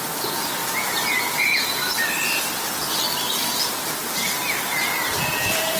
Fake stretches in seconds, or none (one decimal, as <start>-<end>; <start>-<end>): 0.0-0.6; 1.4-1.9; 5.2-5.8